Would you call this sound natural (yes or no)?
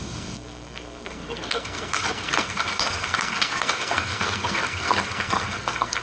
no